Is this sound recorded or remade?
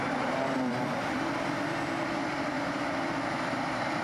remade